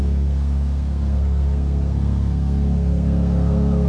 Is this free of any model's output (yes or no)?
no